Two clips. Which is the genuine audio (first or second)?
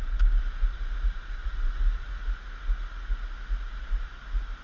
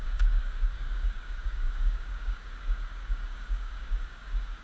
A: first